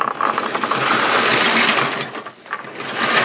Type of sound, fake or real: real